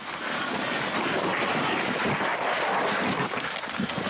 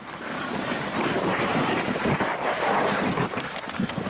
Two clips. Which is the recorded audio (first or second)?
first